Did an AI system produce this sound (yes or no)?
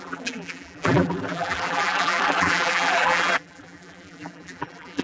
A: yes